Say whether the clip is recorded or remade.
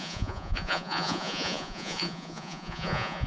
remade